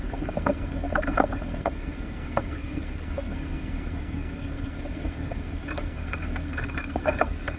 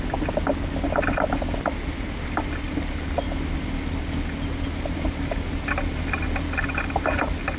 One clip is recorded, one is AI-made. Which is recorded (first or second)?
second